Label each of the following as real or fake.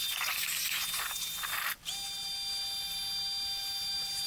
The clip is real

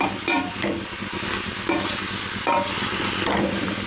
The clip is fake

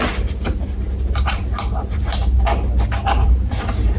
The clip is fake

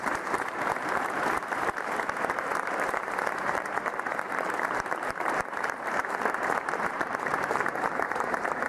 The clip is fake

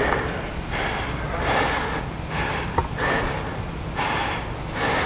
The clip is real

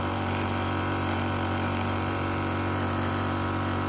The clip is fake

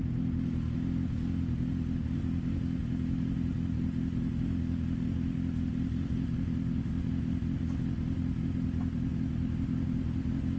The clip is real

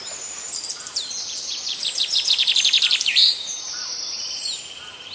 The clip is fake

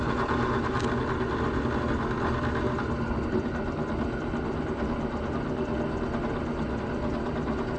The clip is real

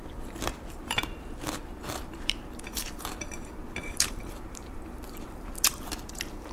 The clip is fake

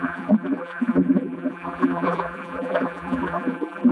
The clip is fake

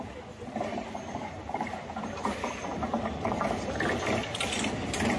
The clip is fake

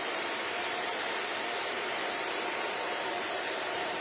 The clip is fake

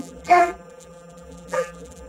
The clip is fake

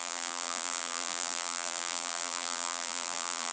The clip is fake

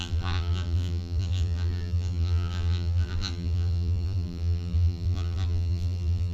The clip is fake